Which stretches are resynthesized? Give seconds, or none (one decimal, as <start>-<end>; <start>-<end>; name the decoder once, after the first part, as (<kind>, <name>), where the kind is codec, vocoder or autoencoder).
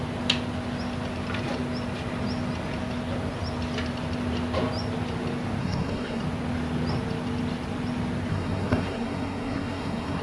5.6-6.2 (codec, SNAC); 8.3-10.2